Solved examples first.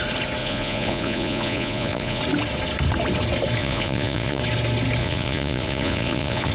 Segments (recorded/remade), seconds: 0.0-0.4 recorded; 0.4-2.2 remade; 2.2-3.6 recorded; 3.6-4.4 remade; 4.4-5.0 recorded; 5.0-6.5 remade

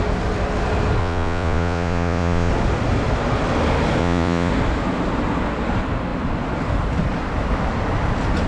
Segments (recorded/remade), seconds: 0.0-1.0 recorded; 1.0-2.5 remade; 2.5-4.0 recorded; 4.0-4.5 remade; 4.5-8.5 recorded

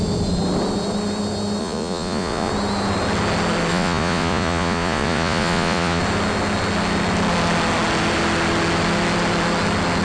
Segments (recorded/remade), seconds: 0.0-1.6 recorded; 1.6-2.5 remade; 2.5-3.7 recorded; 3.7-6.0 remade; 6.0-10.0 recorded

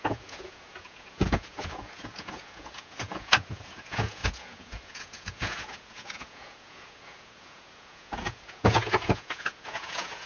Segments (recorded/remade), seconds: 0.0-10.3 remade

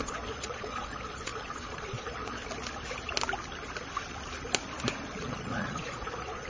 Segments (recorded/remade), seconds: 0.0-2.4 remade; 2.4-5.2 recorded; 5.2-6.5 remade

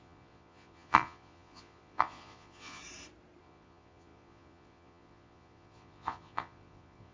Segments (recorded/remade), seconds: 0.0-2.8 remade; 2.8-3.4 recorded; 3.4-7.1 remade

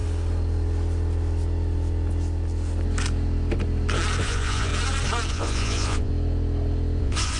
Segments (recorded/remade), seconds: 0.0-4.2 recorded; 4.2-4.7 remade; 4.7-5.3 recorded; 5.3-6.1 remade; 6.1-7.0 recorded; 7.0-7.4 remade

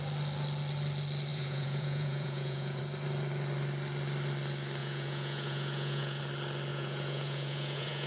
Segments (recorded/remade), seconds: 0.0-1.3 recorded; 1.3-2.8 remade; 2.8-4.8 recorded; 4.8-6.2 remade; 6.2-6.7 recorded; 6.7-8.1 remade